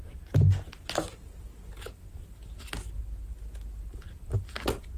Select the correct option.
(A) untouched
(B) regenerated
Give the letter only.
A